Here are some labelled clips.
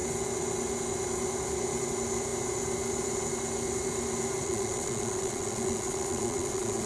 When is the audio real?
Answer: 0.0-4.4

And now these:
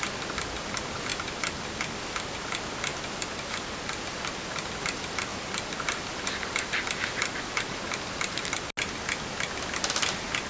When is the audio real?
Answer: 0.0-10.5

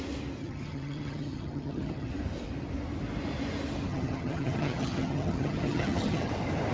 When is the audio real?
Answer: 0.0-0.4; 2.1-3.9; 6.3-6.7

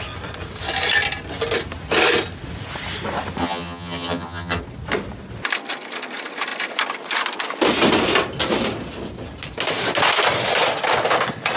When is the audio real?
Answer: 0.0-3.4; 4.6-11.6